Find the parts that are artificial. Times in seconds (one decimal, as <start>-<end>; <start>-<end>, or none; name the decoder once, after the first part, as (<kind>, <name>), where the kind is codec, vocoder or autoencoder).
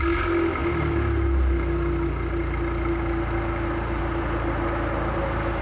none